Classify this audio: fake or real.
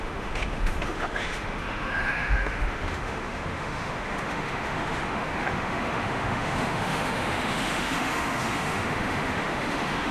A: fake